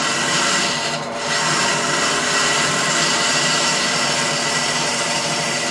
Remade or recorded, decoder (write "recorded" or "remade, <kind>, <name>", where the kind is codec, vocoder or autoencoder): remade, vocoder, BigVGAN v2